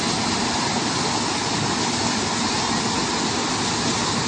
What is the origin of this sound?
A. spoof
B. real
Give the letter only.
B